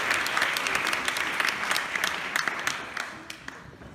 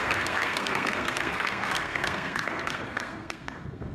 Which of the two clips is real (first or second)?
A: first